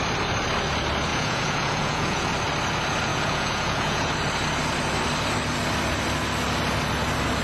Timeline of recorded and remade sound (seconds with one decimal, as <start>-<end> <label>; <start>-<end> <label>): 0.0-1.1 recorded; 1.1-2.3 remade; 2.3-3.1 recorded; 3.1-4.1 remade; 4.1-7.4 recorded